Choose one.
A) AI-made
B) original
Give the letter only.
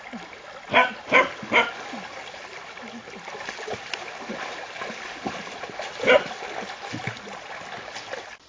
B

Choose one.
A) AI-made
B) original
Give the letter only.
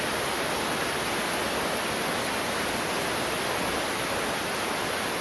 B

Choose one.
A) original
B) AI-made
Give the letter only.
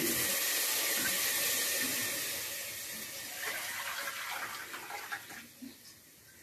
A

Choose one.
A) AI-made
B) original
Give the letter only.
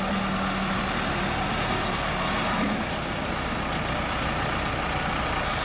B